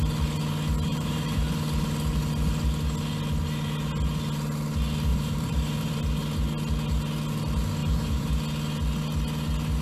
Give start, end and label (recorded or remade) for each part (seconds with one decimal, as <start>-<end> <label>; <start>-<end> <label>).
0.0-0.9 recorded; 0.9-1.4 remade; 1.4-5.1 recorded; 5.1-6.0 remade; 6.0-7.8 recorded; 7.8-8.3 remade; 8.3-9.8 recorded

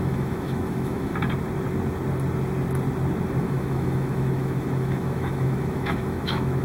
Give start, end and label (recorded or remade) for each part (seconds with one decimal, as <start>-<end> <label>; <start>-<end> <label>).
0.0-1.1 remade; 1.1-3.4 recorded; 3.4-6.6 remade